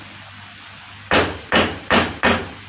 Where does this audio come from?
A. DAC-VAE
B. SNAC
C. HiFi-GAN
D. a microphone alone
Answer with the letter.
D